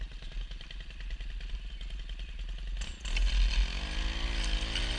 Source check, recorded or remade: recorded